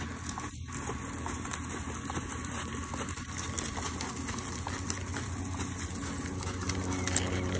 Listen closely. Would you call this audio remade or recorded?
recorded